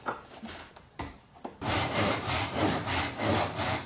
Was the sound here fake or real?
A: fake